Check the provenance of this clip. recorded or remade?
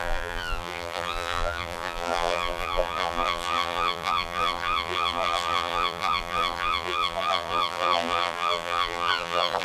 remade